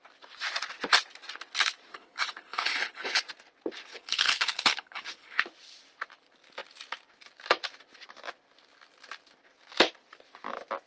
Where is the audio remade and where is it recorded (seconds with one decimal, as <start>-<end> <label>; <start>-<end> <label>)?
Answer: 0.0-1.9 recorded; 1.9-3.2 remade; 3.2-3.9 recorded; 3.9-5.4 remade; 5.4-10.9 recorded